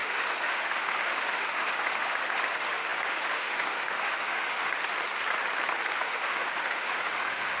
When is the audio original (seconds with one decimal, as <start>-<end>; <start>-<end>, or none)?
4.7-5.9